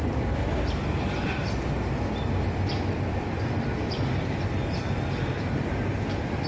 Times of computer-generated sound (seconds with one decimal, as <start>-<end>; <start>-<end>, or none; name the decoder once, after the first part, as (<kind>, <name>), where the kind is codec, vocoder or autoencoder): none